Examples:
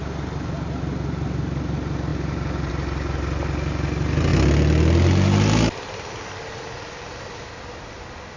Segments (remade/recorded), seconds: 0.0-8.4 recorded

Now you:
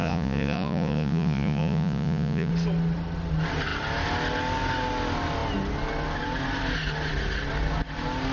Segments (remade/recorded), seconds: 0.0-2.5 remade; 2.5-8.3 recorded

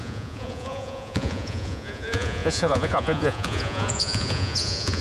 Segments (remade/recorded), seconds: 0.0-5.0 remade

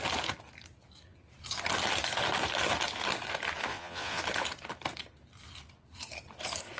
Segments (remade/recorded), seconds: 0.0-3.7 recorded; 3.7-4.2 remade; 4.2-6.8 recorded

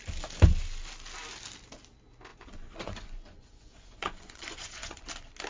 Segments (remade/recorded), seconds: 0.0-2.3 recorded; 2.3-5.1 remade; 5.1-5.5 recorded

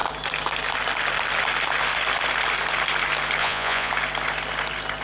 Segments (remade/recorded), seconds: 0.0-3.4 recorded; 3.4-3.9 remade; 3.9-5.0 recorded

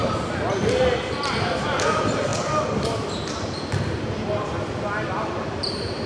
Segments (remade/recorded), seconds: 0.0-6.1 recorded